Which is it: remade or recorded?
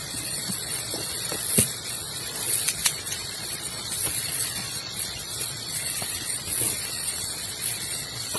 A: remade